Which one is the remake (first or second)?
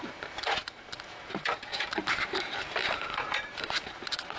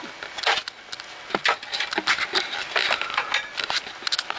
first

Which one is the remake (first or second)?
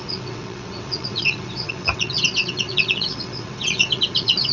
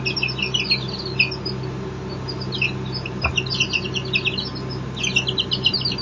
first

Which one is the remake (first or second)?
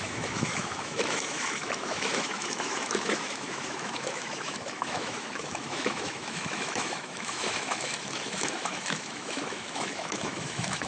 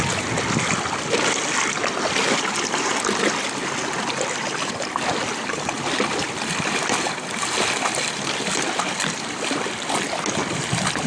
first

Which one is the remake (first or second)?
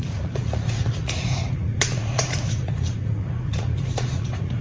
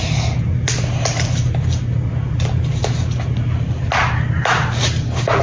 first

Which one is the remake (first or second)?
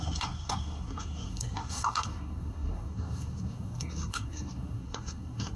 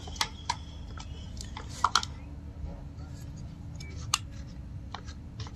first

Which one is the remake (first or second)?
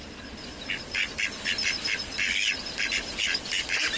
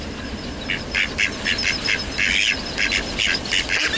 first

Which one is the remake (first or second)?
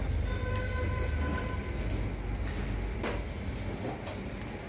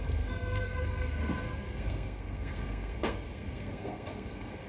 second